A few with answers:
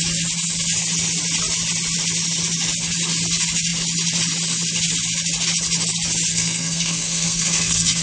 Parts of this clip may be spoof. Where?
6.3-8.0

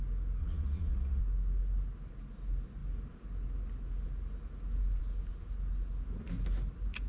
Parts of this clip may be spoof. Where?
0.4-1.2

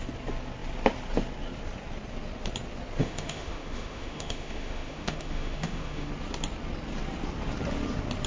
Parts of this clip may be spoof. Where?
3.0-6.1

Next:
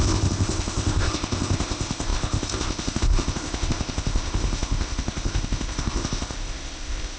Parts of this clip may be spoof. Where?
0.0-7.2

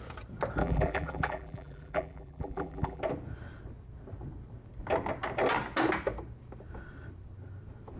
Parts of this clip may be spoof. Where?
0.6-3.0

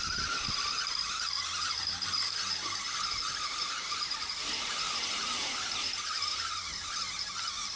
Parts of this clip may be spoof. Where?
0.0-7.8

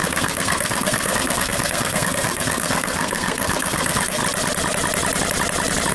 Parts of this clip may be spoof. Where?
0.0-4.2